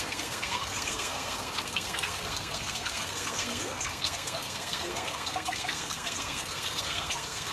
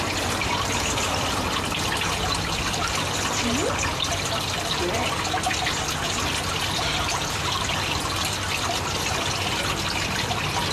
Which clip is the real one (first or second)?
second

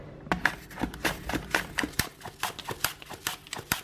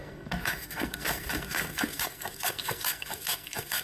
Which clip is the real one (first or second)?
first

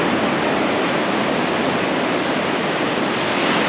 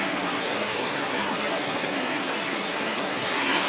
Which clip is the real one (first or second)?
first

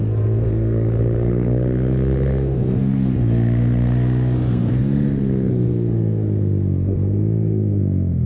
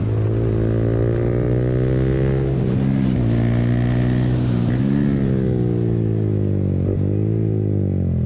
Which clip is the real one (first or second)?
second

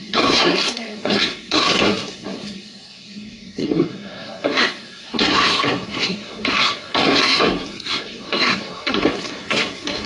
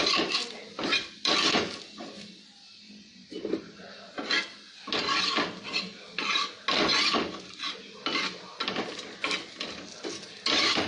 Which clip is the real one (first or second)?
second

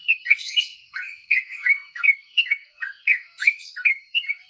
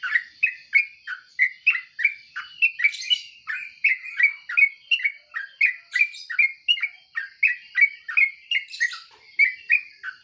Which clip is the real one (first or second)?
second